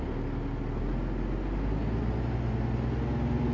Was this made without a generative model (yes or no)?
yes